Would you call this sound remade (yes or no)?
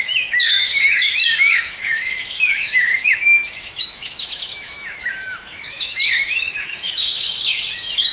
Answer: yes